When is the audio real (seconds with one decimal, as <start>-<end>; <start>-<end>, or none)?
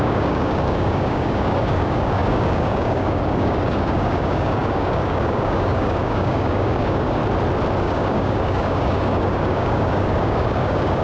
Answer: 7.2-7.8